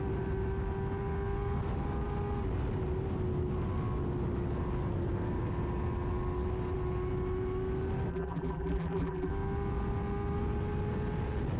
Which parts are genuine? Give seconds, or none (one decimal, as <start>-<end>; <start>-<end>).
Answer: 0.0-8.1; 9.3-11.6